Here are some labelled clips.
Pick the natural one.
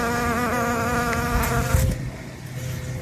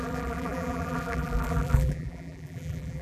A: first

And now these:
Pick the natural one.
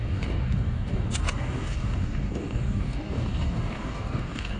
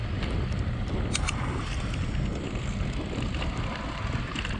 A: second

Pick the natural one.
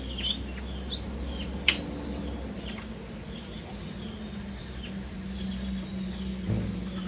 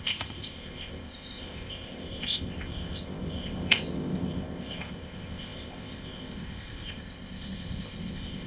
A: first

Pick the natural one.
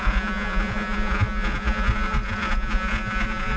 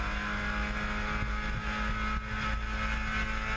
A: second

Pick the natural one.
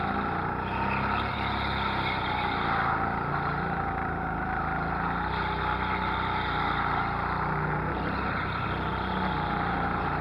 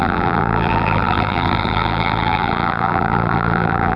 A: first